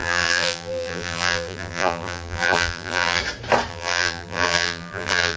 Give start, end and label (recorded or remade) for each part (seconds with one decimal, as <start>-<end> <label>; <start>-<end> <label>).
0.0-3.2 remade; 3.2-3.7 recorded; 3.7-5.4 remade

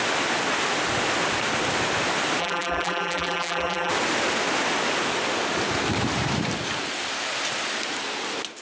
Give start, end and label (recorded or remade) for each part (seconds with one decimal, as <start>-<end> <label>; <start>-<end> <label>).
0.0-2.4 recorded; 2.4-3.9 remade; 3.9-8.6 recorded

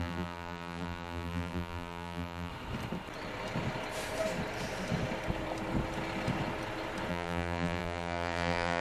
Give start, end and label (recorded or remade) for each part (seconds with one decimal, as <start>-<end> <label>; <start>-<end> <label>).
0.0-2.5 remade; 2.5-7.1 recorded; 7.1-8.8 remade

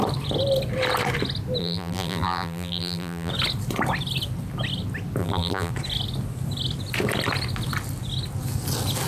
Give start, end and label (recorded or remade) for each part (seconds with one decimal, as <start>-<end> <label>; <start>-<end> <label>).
0.0-1.6 recorded; 1.6-3.3 remade; 3.3-5.2 recorded; 5.2-5.7 remade; 5.7-9.1 recorded

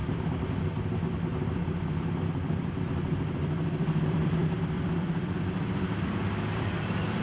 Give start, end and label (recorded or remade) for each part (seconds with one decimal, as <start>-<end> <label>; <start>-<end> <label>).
0.0-7.2 remade